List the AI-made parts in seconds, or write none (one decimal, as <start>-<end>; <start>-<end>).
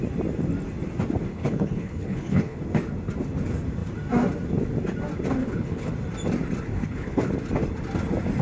1.3-2.6; 5.4-5.9; 6.7-7.3